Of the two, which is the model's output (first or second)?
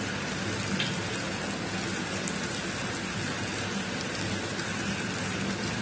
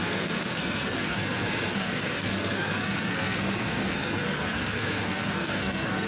second